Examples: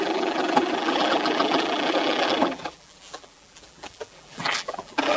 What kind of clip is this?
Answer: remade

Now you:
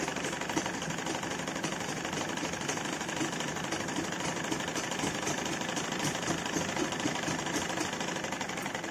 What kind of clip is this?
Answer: remade